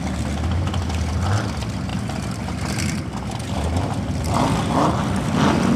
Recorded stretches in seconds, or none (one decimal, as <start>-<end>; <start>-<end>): 0.0-5.8